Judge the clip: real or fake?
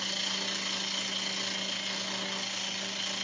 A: real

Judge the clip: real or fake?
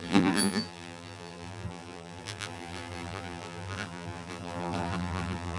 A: fake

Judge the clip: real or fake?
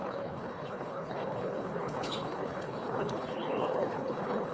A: fake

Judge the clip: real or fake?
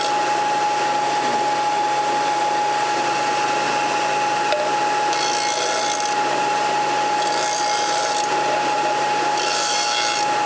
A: real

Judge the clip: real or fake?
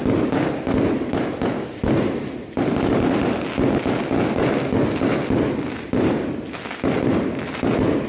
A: real